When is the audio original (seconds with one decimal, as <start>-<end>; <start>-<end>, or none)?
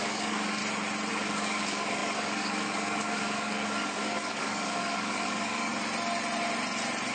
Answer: 0.6-1.1; 5.7-7.1